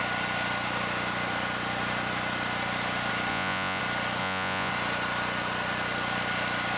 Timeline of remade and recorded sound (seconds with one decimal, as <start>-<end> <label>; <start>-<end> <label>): 0.0-3.3 recorded; 3.3-3.8 remade; 3.8-4.2 recorded; 4.2-4.7 remade; 4.7-6.8 recorded